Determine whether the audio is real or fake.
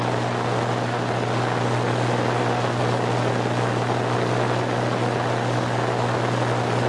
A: real